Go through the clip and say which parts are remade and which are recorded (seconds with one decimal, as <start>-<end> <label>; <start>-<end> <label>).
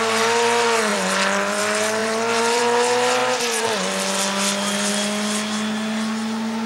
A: 0.0-0.9 recorded; 0.9-1.6 remade; 1.6-2.0 recorded; 2.0-2.6 remade; 2.6-6.7 recorded